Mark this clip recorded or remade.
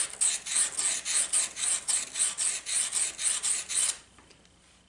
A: recorded